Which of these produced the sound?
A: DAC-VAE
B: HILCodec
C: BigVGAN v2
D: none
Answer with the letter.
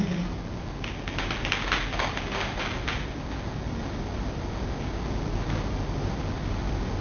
D